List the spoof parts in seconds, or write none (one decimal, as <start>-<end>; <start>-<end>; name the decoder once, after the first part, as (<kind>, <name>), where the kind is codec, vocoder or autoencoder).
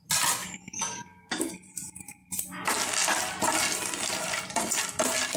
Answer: 0.4-1.5 (codec, DAC)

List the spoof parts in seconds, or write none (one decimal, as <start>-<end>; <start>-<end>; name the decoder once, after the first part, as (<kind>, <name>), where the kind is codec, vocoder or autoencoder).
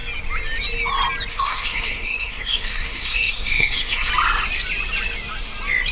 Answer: 1.3-4.1 (codec, SNAC)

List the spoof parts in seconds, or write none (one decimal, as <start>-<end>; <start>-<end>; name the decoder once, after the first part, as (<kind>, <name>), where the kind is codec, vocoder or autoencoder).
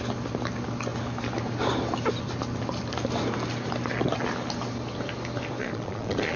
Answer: 5.6-6.4 (vocoder, Vocos)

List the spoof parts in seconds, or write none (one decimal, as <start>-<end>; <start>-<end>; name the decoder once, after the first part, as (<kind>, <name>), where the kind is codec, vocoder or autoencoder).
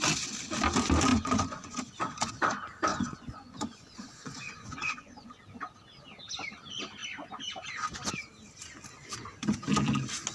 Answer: 1.1-2.3 (vocoder, Vocos); 2.9-5.4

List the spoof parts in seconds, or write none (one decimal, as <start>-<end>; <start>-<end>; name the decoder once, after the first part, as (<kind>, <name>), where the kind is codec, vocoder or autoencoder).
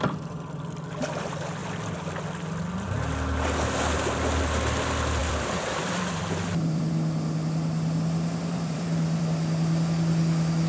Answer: 5.2-6.9 (vocoder, BigVGAN v2); 8.4-9.2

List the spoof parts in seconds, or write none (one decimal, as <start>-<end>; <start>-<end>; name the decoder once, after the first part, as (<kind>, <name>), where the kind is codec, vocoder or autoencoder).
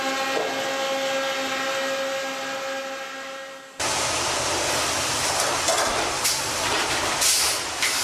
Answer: none